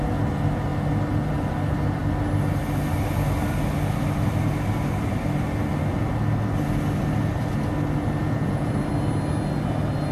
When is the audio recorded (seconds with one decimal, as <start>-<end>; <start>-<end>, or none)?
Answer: 0.0-8.2; 8.7-10.1